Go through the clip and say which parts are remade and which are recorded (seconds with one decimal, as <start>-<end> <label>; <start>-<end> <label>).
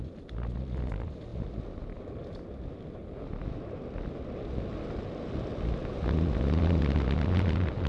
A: 0.0-7.9 recorded